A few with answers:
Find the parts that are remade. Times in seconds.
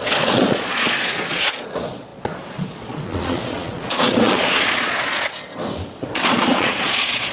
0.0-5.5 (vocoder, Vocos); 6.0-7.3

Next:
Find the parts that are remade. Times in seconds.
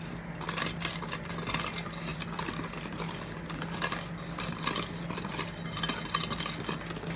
none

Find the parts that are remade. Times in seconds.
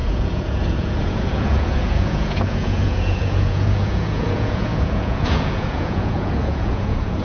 0.0-7.2 (vocoder, Vocos)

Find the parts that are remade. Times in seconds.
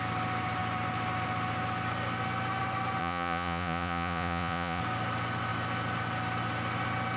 3.0-4.8 (vocoder, Vocos)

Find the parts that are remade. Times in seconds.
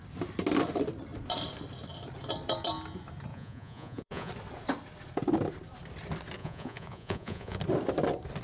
3.3-4.3 (vocoder, Vocos); 6.4-7.6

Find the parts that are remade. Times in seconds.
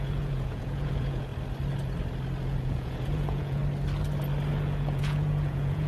0.0-1.3 (vocoder, Vocos); 2.4-3.6; 4.5-5.9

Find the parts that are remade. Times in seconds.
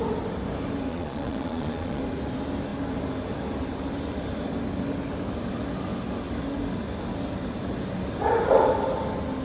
0.9-2.0 (vocoder, Vocos)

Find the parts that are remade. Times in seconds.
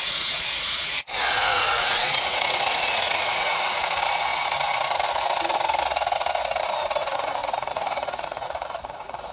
0.0-4.3 (vocoder, Vocos); 7.0-9.3